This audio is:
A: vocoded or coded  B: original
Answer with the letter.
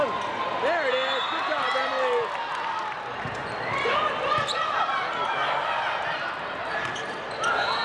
B